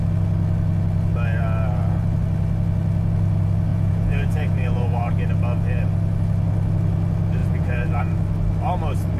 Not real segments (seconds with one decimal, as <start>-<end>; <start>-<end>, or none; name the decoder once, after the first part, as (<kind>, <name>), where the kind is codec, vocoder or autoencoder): 3.7-5.1 (vocoder, Vocos); 7.4-8.0